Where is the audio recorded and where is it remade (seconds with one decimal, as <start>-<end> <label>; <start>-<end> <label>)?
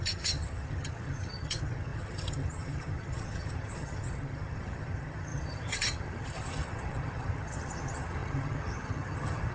0.0-9.5 remade